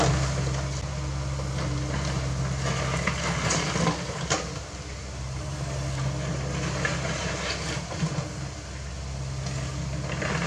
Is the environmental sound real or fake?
real